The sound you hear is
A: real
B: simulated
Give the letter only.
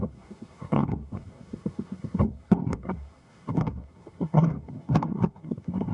B